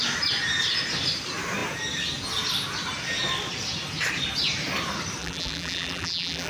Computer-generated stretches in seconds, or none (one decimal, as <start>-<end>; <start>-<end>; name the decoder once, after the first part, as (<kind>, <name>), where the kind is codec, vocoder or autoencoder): 5.2-6.5 (vocoder, BigVGAN v2)

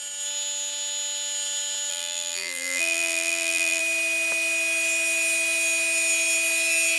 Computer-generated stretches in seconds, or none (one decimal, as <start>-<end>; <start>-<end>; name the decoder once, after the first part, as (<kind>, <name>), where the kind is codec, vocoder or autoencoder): 1.9-3.8 (vocoder, BigVGAN v2)

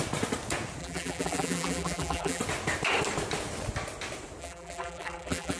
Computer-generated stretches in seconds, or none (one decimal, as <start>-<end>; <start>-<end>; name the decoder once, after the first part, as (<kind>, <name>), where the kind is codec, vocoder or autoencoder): 0.8-2.4 (vocoder, BigVGAN v2); 4.4-5.6

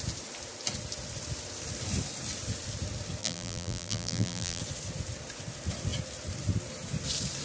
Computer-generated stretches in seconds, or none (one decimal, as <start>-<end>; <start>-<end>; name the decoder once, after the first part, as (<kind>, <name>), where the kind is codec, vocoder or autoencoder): 3.2-4.6 (vocoder, BigVGAN v2)

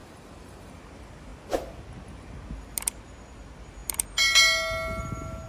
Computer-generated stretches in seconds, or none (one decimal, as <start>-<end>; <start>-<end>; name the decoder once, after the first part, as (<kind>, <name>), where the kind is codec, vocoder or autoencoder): 0.0-0.7 (vocoder, BigVGAN v2)

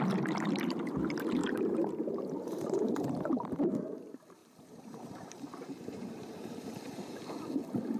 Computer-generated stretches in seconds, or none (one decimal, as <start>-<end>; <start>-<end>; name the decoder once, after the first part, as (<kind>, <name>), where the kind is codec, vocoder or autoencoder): 1.4-3.4 (vocoder, BigVGAN v2); 4.4-7.2

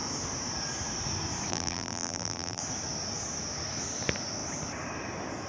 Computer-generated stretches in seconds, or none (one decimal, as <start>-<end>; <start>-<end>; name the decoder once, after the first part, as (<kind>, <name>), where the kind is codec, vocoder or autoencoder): 1.5-2.6 (vocoder, BigVGAN v2)